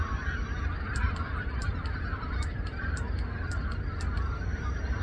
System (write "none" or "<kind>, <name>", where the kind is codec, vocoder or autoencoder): vocoder, BigVGAN v2